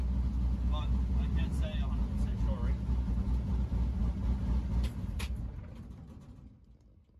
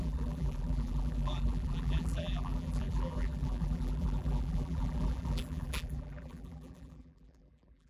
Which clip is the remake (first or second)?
second